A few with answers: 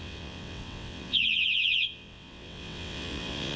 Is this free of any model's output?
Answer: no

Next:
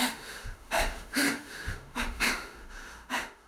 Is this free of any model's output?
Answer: no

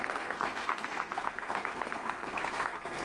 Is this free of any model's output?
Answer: no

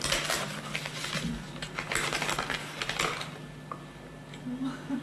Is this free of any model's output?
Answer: yes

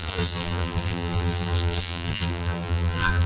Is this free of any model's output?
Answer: no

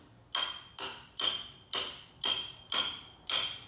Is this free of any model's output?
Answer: yes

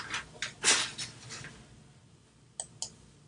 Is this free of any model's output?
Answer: yes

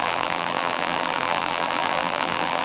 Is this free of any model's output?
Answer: no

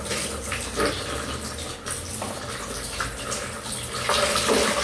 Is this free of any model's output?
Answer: yes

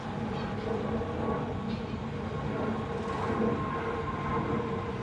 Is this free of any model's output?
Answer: yes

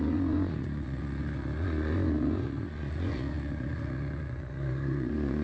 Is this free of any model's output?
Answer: no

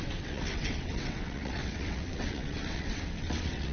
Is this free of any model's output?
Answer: no